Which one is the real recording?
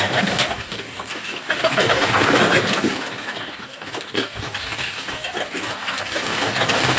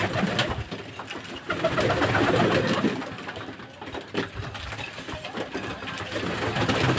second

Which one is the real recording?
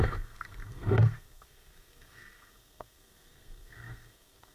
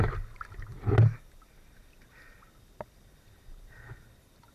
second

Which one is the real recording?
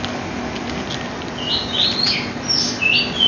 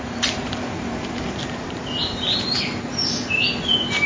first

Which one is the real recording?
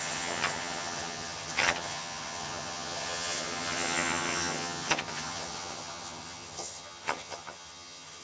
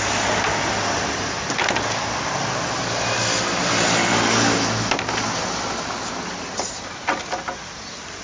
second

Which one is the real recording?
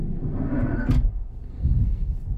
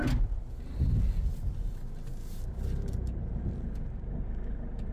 second